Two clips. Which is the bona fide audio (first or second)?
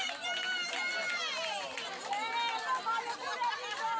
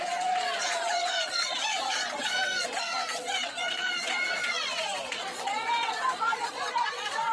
first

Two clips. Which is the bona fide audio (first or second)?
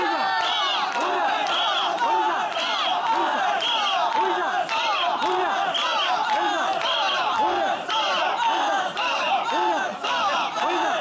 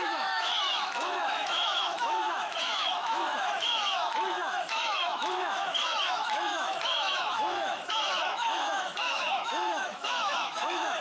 first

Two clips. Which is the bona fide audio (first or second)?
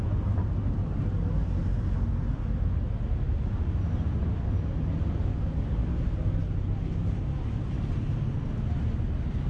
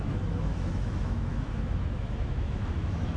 first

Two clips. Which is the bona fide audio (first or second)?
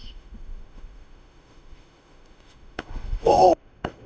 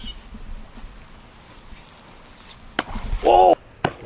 second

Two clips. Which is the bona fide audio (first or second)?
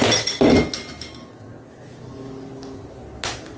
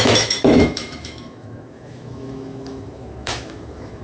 first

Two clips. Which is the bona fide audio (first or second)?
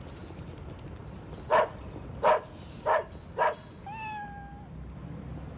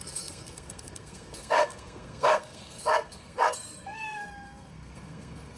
first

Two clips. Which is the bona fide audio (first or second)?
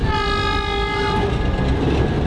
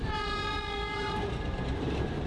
first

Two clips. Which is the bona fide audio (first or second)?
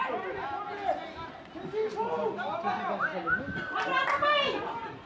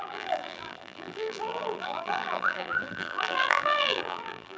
first